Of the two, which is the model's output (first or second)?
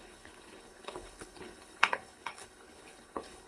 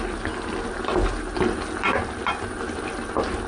first